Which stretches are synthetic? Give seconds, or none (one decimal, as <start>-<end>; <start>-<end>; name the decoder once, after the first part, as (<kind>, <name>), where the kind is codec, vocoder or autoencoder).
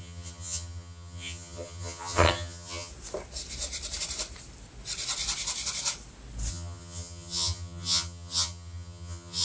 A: 0.0-2.9 (vocoder, HiFi-GAN); 6.5-9.4